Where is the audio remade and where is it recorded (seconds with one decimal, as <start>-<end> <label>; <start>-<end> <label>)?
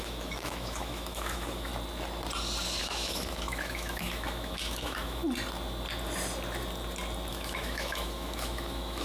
0.0-1.7 remade; 1.7-2.8 recorded; 2.8-5.2 remade; 5.2-7.3 recorded; 7.3-9.0 remade